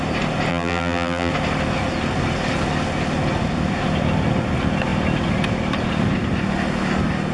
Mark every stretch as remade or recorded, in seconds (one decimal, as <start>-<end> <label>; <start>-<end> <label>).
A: 0.0-0.5 recorded; 0.5-1.3 remade; 1.3-7.3 recorded